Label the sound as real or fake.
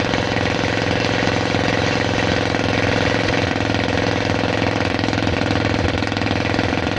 real